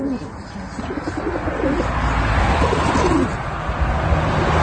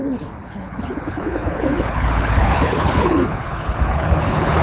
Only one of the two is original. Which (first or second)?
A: first